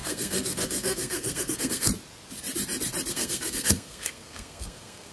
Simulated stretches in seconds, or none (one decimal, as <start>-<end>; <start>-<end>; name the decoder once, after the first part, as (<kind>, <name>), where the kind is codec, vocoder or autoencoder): 0.0-1.9 (codec, SNAC); 3.1-5.1